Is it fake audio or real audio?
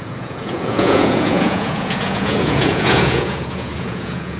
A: fake